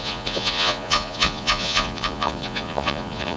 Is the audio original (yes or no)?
no